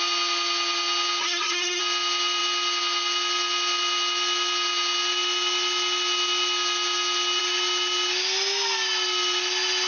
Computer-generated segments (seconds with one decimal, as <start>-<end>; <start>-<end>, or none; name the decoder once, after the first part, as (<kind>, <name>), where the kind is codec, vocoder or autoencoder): 1.2-1.8 (codec, SNAC)